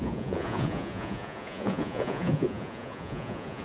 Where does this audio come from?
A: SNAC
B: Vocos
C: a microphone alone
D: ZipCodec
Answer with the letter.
B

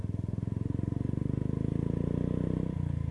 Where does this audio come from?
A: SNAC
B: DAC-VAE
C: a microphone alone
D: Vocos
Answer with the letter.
C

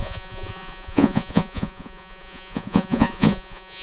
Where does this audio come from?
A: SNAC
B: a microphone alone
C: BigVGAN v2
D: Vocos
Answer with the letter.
D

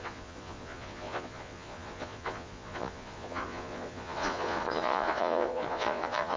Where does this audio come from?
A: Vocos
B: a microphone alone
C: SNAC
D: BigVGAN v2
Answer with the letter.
A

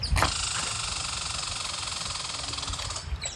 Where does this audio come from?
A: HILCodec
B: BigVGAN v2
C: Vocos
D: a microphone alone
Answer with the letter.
D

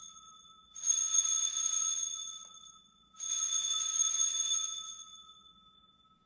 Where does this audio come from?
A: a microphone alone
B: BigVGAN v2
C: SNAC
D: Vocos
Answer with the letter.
D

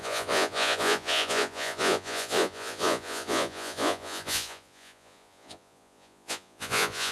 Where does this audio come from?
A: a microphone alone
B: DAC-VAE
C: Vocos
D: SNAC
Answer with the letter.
C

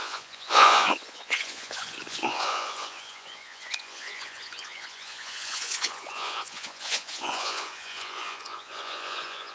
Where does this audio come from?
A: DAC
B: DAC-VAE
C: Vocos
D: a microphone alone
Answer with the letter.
C